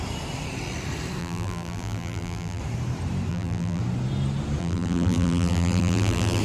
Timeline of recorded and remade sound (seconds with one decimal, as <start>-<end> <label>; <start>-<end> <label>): 0.0-1.2 recorded; 1.2-2.6 remade; 2.6-3.3 recorded; 3.3-3.8 remade; 3.8-4.6 recorded; 4.6-6.4 remade